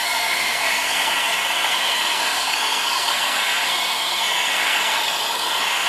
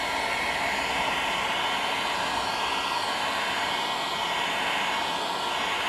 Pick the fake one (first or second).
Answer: first